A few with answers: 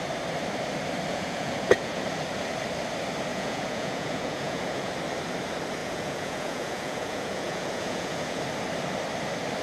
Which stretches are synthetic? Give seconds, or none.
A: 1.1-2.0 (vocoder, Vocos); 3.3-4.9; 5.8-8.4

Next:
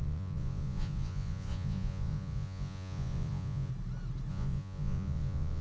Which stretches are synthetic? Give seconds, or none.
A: 0.0-3.7 (vocoder, Vocos); 4.3-5.6

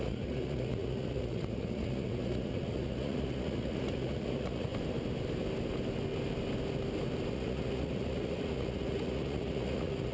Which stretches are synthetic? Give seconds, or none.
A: 0.0-4.7 (vocoder, Vocos); 7.3-10.1

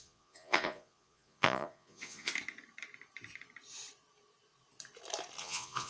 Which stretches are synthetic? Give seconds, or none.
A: 0.0-2.3 (vocoder, Vocos); 5.4-5.9

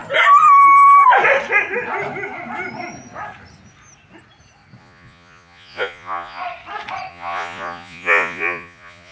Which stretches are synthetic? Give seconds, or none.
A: 4.8-6.4 (vocoder, Vocos); 7.1-9.1

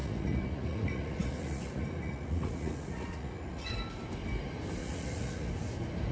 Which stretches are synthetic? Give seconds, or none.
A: 0.0-3.7 (vocoder, Vocos); 4.8-5.5